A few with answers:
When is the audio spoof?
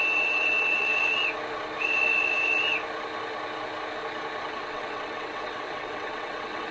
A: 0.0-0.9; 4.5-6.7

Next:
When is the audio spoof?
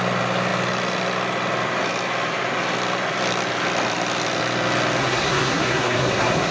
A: 5.0-6.5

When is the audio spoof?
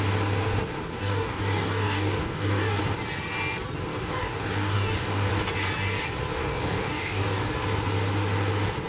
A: 1.0-2.8; 3.9-5.3; 6.4-7.5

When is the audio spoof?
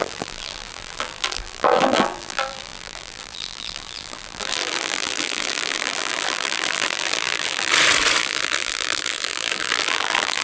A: 0.0-7.7; 8.2-10.4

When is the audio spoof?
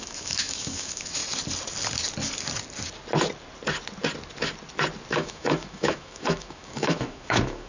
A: 0.0-1.2; 5.1-7.7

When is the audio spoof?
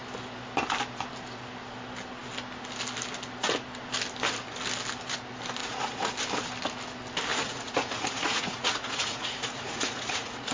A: 5.6-6.1; 7.3-10.5